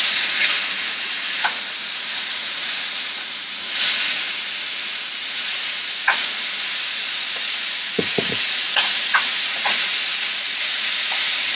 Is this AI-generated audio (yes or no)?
yes